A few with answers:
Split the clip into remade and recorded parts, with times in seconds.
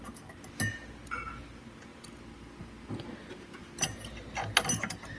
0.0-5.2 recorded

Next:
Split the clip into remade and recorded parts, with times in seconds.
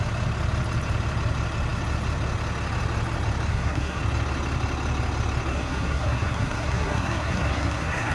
0.0-3.5 recorded; 3.5-4.0 remade; 4.0-5.5 recorded; 5.5-8.1 remade